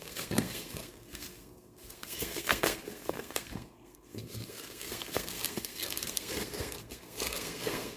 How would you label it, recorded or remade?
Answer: remade